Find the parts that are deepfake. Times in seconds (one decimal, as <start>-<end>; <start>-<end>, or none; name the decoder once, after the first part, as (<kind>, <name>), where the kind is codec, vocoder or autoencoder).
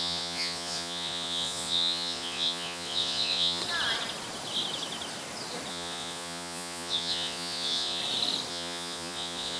0.0-3.6 (vocoder, Vocos); 5.7-8.0; 8.5-9.6